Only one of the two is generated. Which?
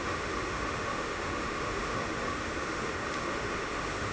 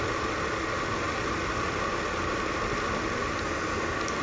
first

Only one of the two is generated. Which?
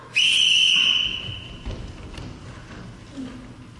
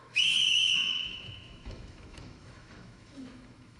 second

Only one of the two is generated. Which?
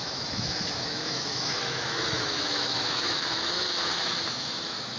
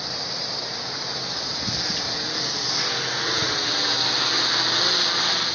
first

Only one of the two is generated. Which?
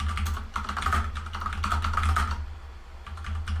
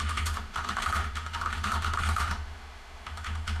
second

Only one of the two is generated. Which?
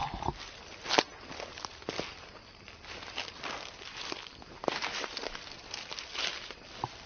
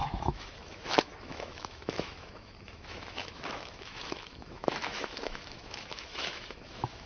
second